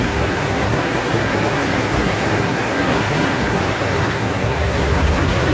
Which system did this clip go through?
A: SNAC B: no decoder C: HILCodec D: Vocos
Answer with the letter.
A